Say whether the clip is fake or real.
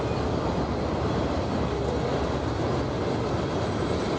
real